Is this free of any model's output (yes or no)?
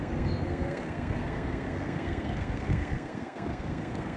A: no